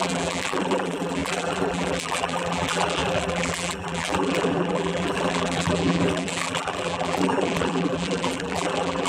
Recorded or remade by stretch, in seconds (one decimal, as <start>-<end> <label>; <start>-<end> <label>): 0.0-9.1 remade